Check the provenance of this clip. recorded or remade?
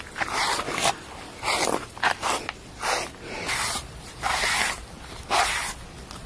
recorded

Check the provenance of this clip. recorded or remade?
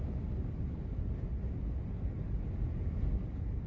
recorded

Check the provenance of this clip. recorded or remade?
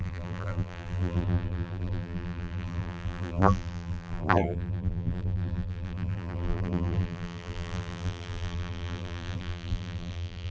remade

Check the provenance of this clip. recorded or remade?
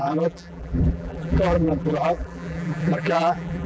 remade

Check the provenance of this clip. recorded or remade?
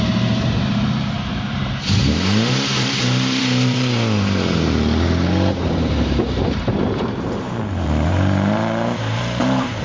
remade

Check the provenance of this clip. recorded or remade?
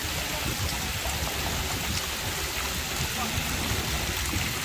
recorded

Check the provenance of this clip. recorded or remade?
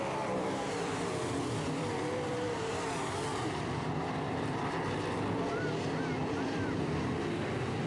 remade